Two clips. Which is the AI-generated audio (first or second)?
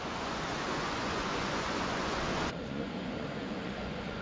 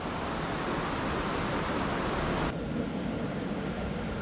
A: first